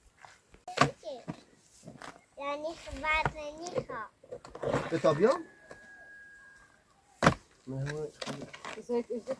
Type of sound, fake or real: real